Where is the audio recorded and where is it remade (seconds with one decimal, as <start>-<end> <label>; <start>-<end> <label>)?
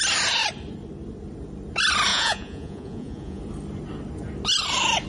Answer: 0.0-2.1 recorded; 2.1-3.4 remade; 3.4-5.1 recorded